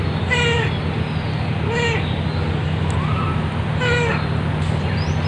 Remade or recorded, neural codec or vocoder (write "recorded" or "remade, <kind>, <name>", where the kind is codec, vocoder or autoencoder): recorded